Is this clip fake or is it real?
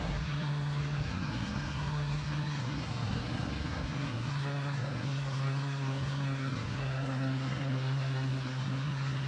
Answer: fake